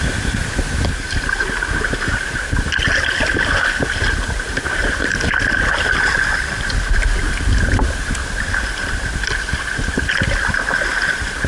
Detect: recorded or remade recorded